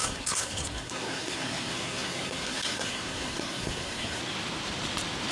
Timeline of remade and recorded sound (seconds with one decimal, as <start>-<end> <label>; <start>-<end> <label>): 0.0-4.2 remade; 4.2-5.3 recorded